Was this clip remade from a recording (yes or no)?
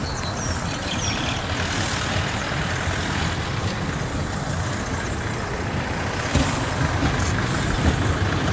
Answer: no